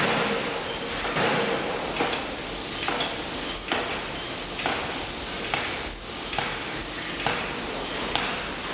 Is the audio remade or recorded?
recorded